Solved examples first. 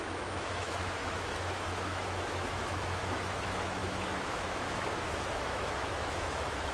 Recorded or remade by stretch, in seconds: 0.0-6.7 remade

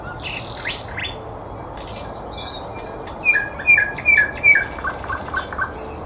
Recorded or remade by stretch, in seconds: 0.0-6.1 recorded

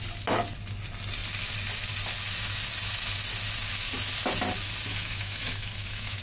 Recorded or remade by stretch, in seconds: 0.0-4.9 recorded; 4.9-6.2 remade